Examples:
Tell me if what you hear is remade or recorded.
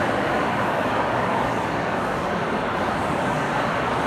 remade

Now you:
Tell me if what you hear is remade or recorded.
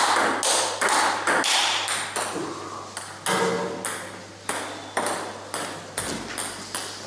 recorded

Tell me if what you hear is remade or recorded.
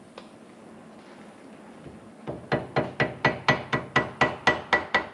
recorded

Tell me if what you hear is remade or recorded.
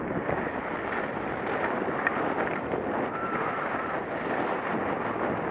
recorded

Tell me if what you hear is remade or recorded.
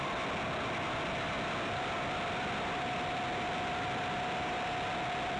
recorded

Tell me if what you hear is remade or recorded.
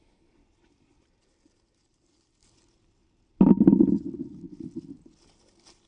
recorded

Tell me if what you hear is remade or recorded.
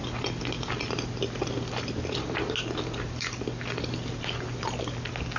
recorded